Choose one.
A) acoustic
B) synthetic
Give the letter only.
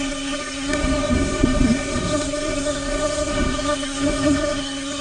B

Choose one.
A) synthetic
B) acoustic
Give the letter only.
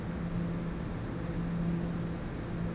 B